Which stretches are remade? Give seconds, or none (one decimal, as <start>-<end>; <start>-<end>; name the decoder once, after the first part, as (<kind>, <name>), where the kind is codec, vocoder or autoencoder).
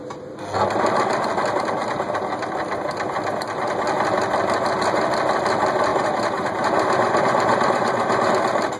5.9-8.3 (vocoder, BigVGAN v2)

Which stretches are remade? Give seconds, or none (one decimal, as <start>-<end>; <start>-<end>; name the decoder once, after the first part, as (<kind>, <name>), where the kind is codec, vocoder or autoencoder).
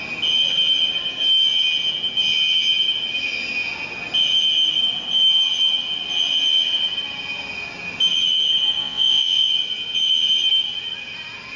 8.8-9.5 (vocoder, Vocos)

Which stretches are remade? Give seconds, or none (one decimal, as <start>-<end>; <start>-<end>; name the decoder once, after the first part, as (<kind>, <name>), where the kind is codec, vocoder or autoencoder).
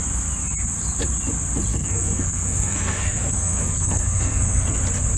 1.7-4.8 (codec, SNAC)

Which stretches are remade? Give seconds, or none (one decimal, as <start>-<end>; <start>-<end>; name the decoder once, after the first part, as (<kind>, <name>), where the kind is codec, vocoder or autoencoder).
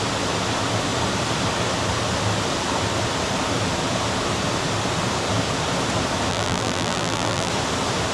6.3-7.5 (vocoder, BigVGAN v2)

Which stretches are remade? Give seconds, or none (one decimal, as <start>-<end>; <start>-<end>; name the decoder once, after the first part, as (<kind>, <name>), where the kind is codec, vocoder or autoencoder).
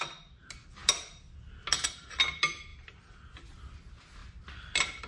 none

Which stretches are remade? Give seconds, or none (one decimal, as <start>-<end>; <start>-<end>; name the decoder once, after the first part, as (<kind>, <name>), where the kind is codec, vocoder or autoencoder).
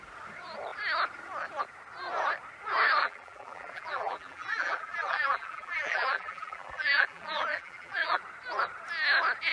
3.0-8.2 (vocoder, BigVGAN v2)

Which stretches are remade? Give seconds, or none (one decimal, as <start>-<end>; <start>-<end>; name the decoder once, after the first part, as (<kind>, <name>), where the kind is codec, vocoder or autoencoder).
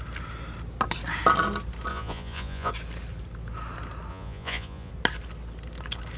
1.9-2.7 (vocoder, Vocos); 4.1-4.9